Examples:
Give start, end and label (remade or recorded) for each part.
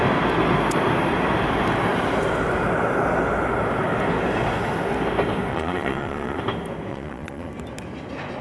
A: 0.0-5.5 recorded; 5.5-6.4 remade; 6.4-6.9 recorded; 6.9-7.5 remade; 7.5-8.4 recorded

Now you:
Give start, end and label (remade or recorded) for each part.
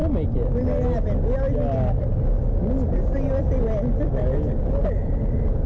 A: 0.0-5.7 recorded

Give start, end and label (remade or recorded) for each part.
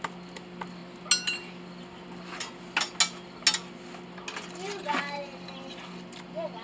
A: 0.0-6.6 recorded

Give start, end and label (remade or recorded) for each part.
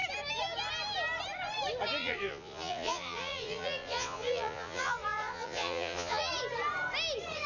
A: 0.0-2.0 recorded; 2.0-6.3 remade; 6.3-7.5 recorded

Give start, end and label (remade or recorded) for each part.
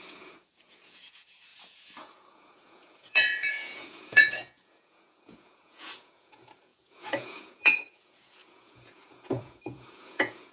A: 0.0-10.5 remade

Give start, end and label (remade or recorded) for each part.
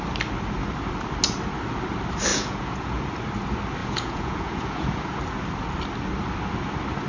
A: 0.0-2.3 recorded; 2.3-3.0 remade; 3.0-3.8 recorded; 3.8-5.2 remade; 5.2-7.1 recorded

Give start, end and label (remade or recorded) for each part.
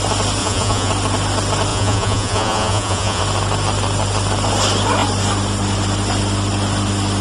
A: 0.0-0.4 recorded; 0.4-0.9 remade; 0.9-1.7 recorded; 1.7-3.2 remade; 3.2-7.2 recorded